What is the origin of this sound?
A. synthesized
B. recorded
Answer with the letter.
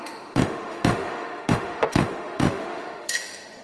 A